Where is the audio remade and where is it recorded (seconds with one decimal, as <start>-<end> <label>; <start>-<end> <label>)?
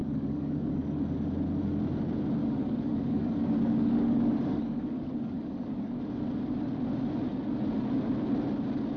0.0-1.0 remade; 1.0-2.4 recorded; 2.4-6.0 remade; 6.0-9.0 recorded